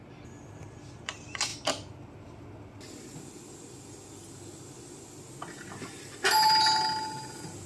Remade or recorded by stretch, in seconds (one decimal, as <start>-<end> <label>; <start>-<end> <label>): 0.0-7.7 recorded